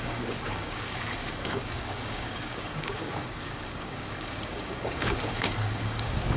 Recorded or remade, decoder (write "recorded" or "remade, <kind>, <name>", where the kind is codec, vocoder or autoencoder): remade, codec, DAC